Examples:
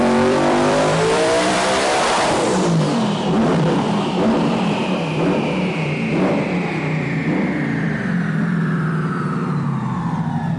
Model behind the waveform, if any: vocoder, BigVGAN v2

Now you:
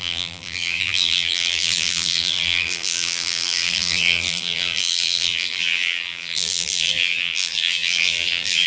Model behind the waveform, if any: vocoder, BigVGAN v2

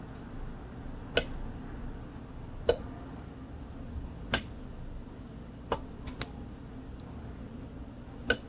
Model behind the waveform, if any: none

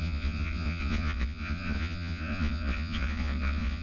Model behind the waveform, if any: vocoder, Vocos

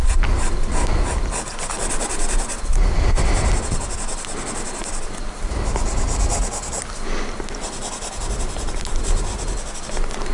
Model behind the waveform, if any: none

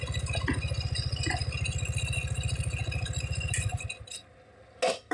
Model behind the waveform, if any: none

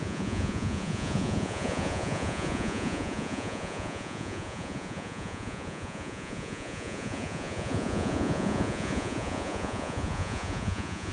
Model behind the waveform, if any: vocoder, Vocos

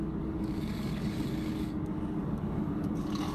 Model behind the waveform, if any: codec, DAC